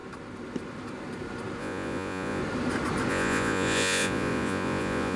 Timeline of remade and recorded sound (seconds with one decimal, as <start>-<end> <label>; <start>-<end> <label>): 0.0-1.6 recorded; 1.6-2.4 remade; 2.4-3.1 recorded; 3.1-5.2 remade